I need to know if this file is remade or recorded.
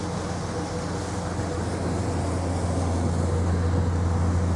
recorded